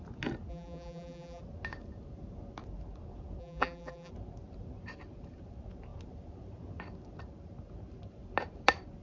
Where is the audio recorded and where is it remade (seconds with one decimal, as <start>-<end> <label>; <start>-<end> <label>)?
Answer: 0.0-0.5 recorded; 0.5-1.4 remade; 1.4-3.4 recorded; 3.4-4.1 remade; 4.1-9.0 recorded